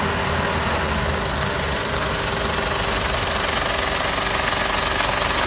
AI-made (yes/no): no